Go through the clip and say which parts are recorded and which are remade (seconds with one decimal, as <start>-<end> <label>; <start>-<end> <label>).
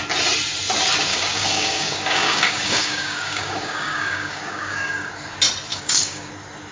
0.0-1.1 recorded; 1.1-5.1 remade; 5.1-5.7 recorded; 5.7-6.3 remade; 6.3-6.7 recorded